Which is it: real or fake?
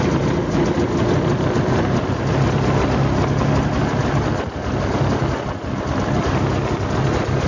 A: real